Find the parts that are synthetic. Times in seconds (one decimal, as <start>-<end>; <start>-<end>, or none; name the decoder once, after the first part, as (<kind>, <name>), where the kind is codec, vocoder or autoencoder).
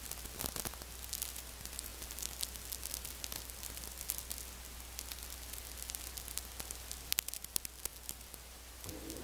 none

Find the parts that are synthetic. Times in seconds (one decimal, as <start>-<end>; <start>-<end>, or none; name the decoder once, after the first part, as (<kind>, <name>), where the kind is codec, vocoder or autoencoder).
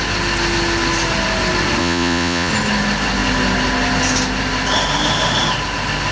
1.8-2.5 (vocoder, Vocos)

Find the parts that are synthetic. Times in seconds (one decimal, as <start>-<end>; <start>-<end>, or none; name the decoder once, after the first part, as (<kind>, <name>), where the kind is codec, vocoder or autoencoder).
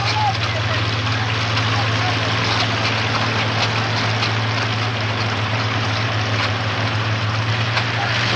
4.9-7.3 (vocoder, BigVGAN v2)